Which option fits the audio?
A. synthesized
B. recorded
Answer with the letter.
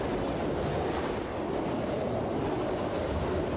B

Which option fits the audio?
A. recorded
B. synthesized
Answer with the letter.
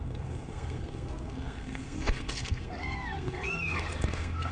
B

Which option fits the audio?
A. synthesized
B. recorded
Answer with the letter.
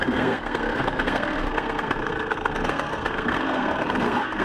A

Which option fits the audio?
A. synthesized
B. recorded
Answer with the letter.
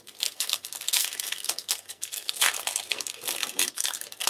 A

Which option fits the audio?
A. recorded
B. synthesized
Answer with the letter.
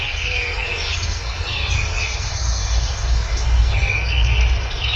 B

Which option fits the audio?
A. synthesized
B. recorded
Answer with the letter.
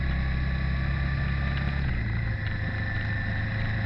B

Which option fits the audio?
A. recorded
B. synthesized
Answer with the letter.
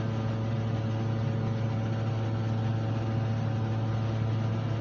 A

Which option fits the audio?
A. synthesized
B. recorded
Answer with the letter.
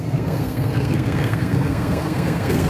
A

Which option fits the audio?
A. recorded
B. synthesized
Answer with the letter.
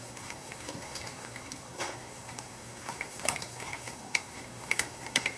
B